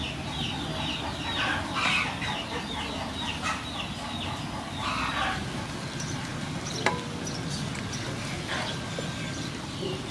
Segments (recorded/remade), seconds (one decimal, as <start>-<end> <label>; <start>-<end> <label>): 0.0-10.1 recorded